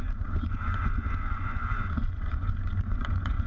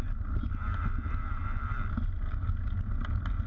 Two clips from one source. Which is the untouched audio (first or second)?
second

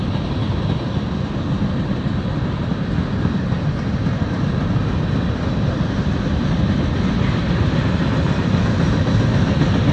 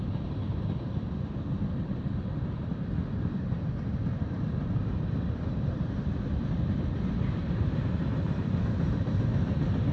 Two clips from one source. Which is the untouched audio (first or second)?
first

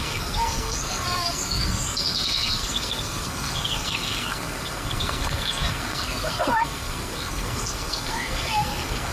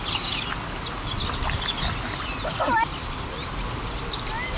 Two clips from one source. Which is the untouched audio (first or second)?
second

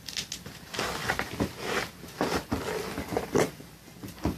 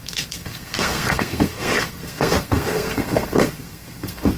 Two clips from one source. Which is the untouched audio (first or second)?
first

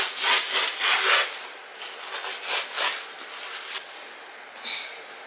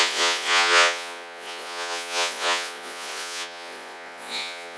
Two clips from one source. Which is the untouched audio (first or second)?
first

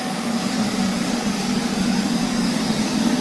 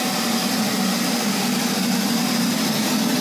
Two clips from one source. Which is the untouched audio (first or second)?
second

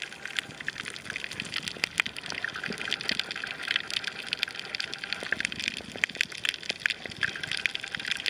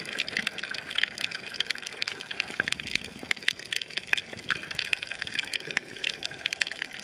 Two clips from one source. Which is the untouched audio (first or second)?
first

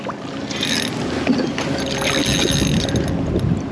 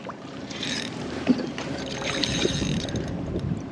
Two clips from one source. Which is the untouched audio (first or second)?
first